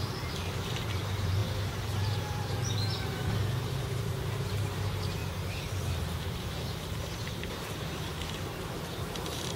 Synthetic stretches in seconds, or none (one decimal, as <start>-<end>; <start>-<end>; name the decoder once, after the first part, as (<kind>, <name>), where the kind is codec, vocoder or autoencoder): 0.0-5.2 (vocoder, BigVGAN v2); 6.0-9.6